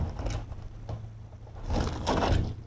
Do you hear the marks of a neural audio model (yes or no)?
no